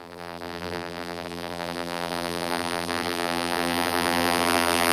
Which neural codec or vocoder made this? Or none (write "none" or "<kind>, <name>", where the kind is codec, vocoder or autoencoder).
vocoder, BigVGAN v2